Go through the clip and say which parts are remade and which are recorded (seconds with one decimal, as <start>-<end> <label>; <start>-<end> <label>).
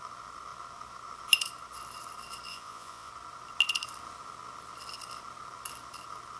0.0-2.5 recorded; 2.5-3.1 remade; 3.1-6.4 recorded